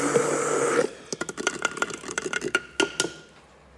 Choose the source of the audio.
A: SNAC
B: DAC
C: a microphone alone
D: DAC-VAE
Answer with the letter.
C